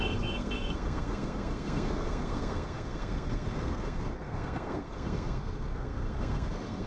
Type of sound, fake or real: fake